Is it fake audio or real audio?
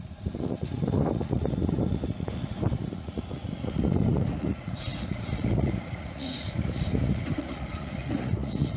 fake